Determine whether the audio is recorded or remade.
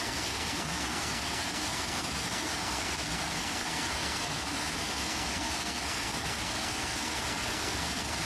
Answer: remade